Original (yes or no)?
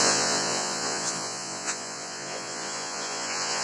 no